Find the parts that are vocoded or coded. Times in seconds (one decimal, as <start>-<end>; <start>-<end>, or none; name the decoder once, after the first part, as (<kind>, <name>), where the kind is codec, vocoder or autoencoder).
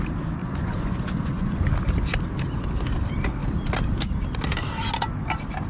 0.4-1.6 (vocoder, Vocos)